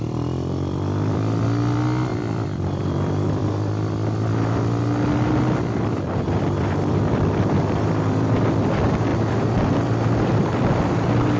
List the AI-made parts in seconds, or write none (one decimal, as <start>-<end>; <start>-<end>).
0.0-3.4; 5.1-11.4